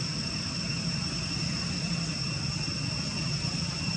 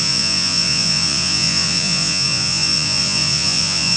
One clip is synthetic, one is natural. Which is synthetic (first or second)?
second